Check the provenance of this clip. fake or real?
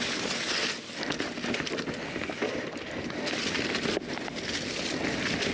real